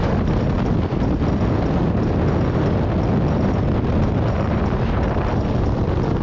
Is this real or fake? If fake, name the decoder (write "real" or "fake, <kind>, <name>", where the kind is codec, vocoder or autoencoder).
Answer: real